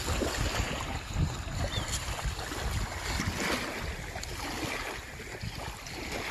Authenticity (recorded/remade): recorded